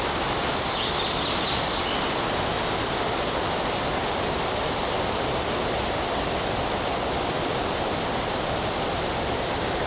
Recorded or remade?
recorded